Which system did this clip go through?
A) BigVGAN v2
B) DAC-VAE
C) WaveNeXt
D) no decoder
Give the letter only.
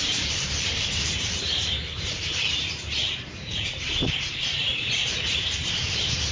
A